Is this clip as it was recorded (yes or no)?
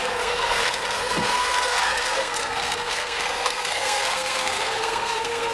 no